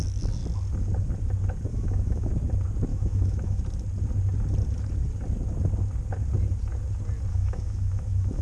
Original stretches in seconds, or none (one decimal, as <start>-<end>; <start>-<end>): 0.0-1.7; 2.3-2.9; 3.6-7.3